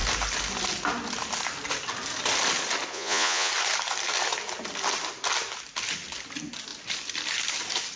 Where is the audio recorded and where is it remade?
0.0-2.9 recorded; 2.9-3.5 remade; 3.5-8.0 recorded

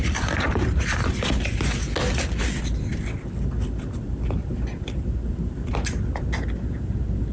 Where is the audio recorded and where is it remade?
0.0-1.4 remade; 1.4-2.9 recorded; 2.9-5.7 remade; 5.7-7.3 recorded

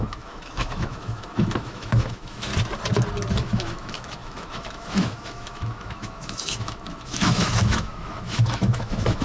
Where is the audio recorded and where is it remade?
0.0-2.5 remade; 2.5-3.3 recorded; 3.3-9.2 remade

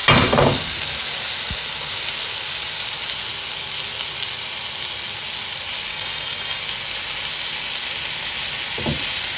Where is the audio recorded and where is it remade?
0.0-5.9 recorded; 5.9-6.6 remade; 6.6-9.4 recorded

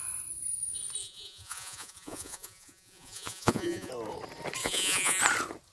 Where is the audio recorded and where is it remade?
0.0-1.0 recorded; 1.0-3.9 remade; 3.9-4.6 recorded; 4.6-5.2 remade; 5.2-5.7 recorded

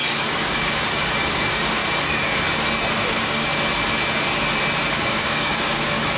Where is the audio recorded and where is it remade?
0.0-1.8 remade; 1.8-2.9 recorded; 2.9-3.5 remade; 3.5-4.9 recorded; 4.9-6.2 remade

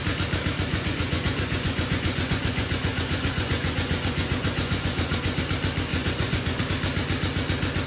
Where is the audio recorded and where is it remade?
0.0-0.7 recorded; 0.7-5.4 remade; 5.4-5.9 recorded; 5.9-6.6 remade; 6.6-7.9 recorded